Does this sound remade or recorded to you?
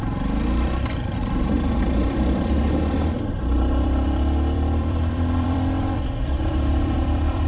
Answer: remade